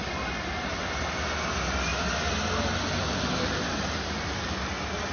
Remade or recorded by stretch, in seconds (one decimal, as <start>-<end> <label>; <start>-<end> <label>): 0.0-5.1 recorded